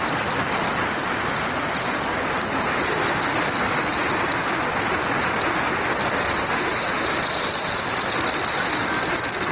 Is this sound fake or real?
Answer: real